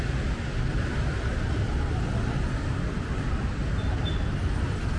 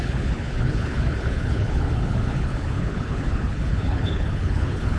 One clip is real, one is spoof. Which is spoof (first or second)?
second